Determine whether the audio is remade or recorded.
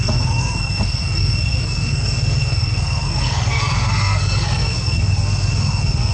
remade